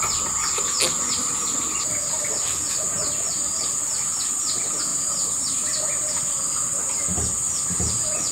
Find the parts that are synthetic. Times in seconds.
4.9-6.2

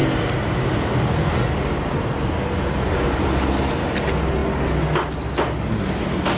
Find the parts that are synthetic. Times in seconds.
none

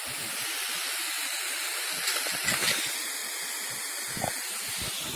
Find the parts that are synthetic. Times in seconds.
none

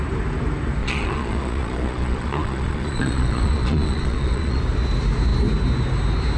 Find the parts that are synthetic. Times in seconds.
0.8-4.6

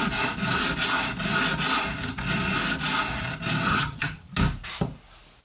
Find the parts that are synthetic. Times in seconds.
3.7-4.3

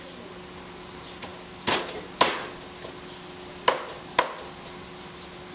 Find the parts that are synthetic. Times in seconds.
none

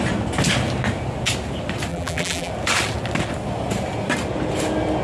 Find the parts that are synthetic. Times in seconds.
1.9-2.5